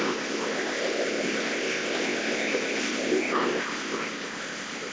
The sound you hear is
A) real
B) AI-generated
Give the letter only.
B